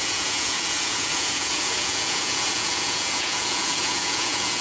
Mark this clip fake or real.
fake